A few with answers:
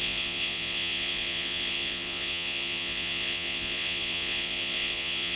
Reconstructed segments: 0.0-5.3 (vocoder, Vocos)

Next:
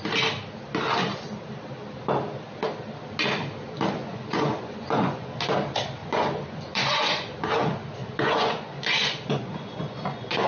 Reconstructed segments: 4.0-5.4 (vocoder, Vocos); 6.0-7.5; 8.0-10.5

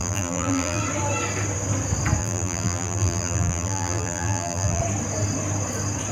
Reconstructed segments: 0.0-0.8 (vocoder, BigVGAN v2); 2.2-4.8

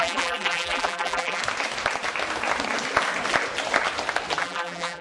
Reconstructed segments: 0.0-1.4 (vocoder, BigVGAN v2); 4.4-5.0

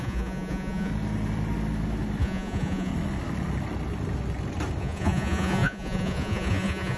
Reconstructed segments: 0.0-0.9 (vocoder, Vocos); 2.2-2.9; 4.8-7.0